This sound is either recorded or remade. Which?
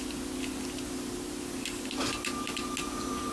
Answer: recorded